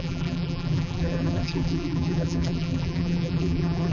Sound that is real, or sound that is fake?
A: fake